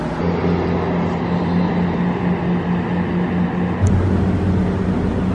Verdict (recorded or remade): recorded